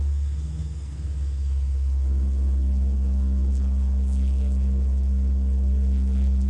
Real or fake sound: fake